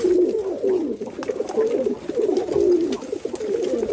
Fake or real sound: real